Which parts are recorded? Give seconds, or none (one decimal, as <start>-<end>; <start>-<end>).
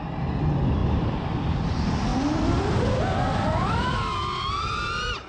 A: 0.0-5.3